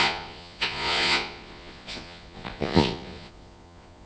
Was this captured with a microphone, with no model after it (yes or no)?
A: no